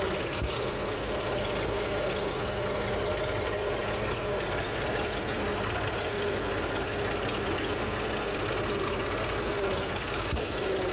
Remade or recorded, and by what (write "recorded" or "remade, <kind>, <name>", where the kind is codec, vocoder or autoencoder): recorded